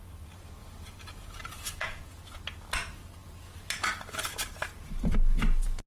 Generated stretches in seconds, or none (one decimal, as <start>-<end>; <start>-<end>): 0.6-2.4